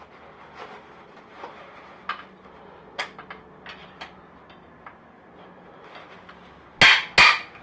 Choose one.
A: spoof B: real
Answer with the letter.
B